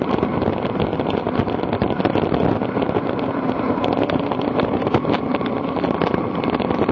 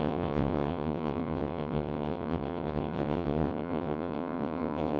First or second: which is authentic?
first